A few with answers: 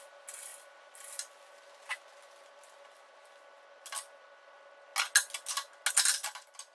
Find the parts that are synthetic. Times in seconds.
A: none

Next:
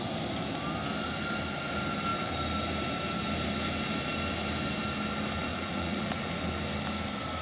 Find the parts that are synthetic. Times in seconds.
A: 5.5-6.2 (vocoder, Vocos)